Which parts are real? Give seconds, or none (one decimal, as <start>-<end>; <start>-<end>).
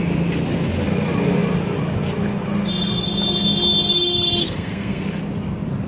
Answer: 0.0-4.4; 5.0-5.9